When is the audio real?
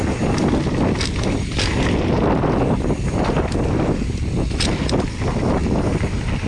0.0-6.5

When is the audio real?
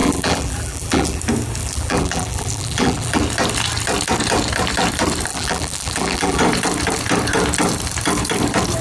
1.2-1.6; 3.2-5.3; 6.4-8.8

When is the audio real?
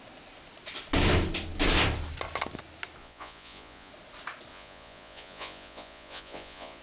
0.0-3.0; 3.9-4.5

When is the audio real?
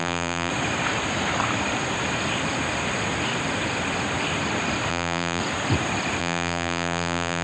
0.5-4.9; 5.4-6.2